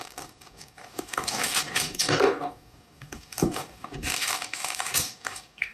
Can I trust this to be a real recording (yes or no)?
no